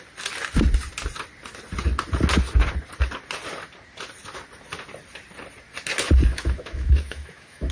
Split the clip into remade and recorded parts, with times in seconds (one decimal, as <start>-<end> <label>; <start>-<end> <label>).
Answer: 0.0-6.3 recorded; 6.3-7.7 remade